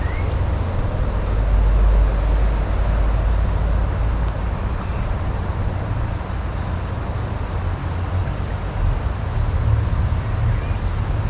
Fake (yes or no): no